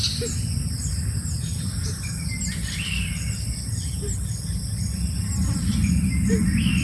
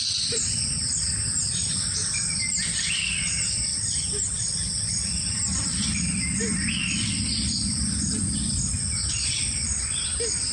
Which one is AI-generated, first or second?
second